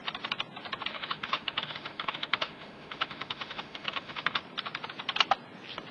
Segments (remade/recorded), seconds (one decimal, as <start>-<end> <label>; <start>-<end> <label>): 0.0-0.9 recorded; 0.9-4.4 remade; 4.4-5.9 recorded